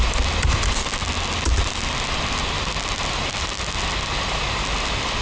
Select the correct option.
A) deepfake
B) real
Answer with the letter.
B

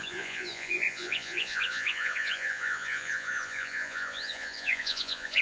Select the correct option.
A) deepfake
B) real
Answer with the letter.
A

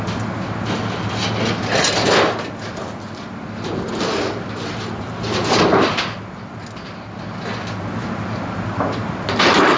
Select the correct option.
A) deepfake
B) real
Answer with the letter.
B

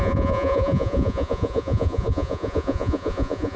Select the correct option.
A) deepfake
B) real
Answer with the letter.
A